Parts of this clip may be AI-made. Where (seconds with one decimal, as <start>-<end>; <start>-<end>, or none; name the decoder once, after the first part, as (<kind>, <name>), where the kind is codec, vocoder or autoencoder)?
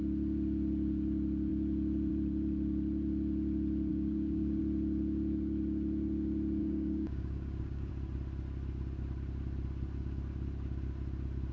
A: 3.9-4.6 (codec, DAC); 6.6-7.9